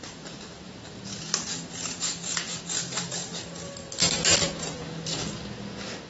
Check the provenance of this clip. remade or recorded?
recorded